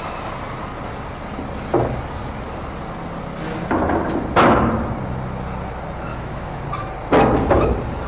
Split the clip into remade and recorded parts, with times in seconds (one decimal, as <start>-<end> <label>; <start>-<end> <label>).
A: 0.0-6.1 recorded; 6.1-6.6 remade; 6.6-8.1 recorded